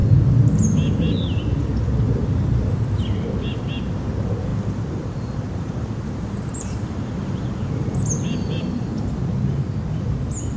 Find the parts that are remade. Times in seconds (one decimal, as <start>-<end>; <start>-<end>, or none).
4.5-8.9